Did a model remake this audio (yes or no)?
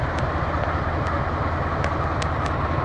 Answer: no